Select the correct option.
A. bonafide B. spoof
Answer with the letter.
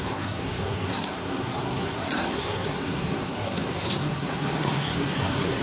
B